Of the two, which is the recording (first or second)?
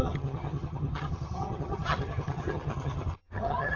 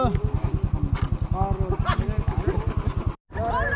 second